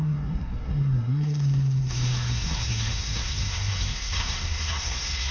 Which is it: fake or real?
fake